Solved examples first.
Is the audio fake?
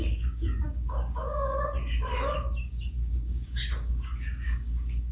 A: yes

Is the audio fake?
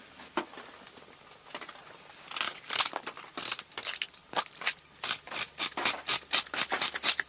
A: no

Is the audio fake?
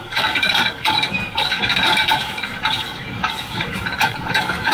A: yes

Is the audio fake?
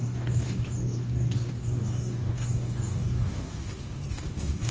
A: yes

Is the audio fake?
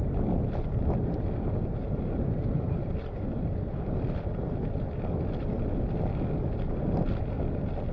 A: no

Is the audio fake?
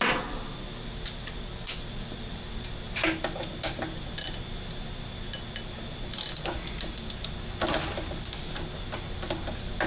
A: no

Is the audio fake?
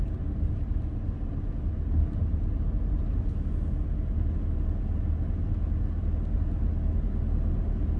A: no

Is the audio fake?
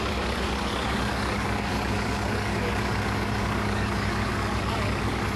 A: yes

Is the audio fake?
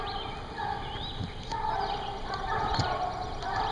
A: no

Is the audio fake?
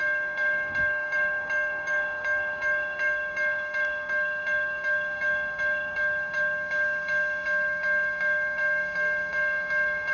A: yes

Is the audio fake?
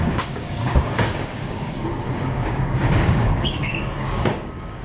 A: yes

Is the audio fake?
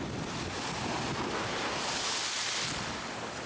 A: no